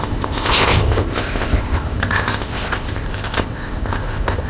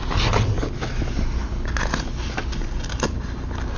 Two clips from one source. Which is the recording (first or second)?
second